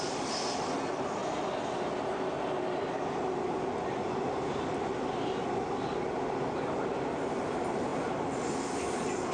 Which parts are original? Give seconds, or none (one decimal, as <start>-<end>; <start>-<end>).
0.0-9.3